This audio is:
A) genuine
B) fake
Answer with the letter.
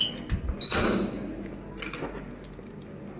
A